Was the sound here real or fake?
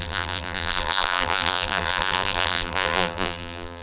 fake